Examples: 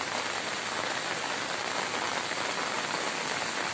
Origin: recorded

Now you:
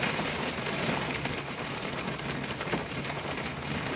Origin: remade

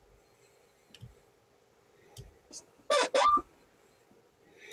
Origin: recorded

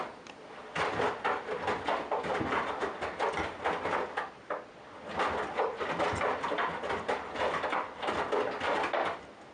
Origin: recorded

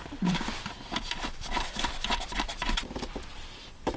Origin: remade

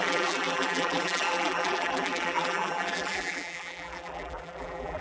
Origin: remade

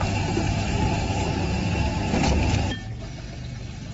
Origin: recorded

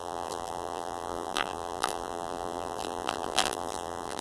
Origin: remade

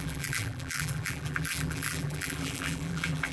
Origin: remade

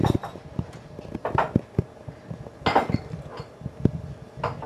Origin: recorded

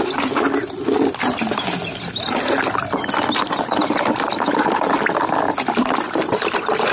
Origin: recorded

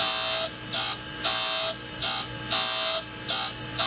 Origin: recorded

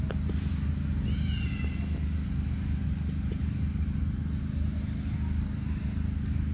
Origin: recorded